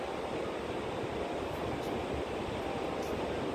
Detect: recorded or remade recorded